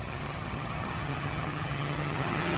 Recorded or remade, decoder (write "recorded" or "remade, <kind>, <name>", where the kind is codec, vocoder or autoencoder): remade, vocoder, HiFi-GAN